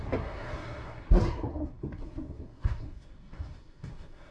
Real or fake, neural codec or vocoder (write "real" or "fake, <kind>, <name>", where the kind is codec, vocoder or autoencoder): fake, codec, SNAC